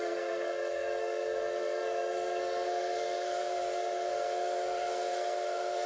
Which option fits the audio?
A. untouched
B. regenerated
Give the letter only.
B